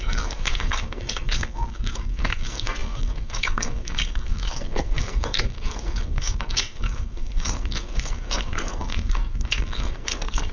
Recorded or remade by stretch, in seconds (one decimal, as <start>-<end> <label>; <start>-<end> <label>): 0.0-10.5 remade